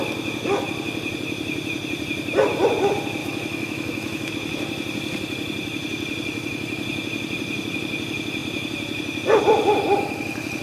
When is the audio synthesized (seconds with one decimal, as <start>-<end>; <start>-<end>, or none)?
3.2-4.3